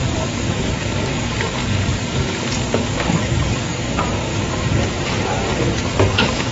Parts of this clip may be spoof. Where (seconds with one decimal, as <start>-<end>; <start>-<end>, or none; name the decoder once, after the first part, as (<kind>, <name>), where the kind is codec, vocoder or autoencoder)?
0.0-4.3 (codec, DAC); 5.6-6.5